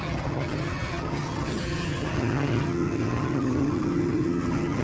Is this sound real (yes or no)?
no